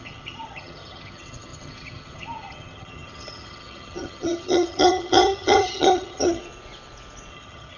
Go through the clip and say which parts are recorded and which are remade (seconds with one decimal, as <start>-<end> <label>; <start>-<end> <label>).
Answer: 0.0-6.4 remade; 6.4-7.3 recorded; 7.3-7.8 remade